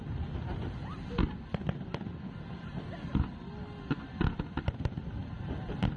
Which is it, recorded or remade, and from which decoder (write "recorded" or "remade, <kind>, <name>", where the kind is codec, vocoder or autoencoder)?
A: recorded